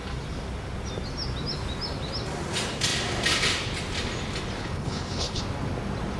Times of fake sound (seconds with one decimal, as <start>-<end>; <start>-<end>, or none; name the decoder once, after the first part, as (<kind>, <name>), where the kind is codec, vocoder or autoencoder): 4.6-5.4 (codec, HILCodec)